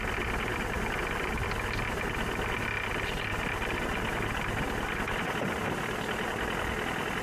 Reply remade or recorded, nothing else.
recorded